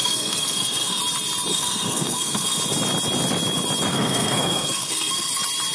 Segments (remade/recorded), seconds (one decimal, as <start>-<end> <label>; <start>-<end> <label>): 0.0-1.0 remade; 1.0-1.5 recorded; 1.5-2.6 remade; 2.6-3.9 recorded; 3.9-5.3 remade; 5.3-5.7 recorded